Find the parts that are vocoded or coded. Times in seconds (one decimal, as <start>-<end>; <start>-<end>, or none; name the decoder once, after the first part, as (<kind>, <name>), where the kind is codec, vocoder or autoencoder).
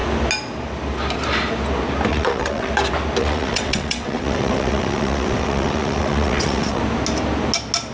2.1-2.7 (vocoder, WaveNeXt); 3.2-6.8